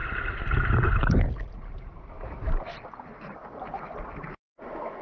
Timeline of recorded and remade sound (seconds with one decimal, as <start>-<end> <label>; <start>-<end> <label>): 0.0-5.0 recorded